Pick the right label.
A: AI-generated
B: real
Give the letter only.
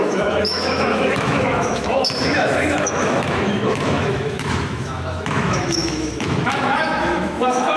A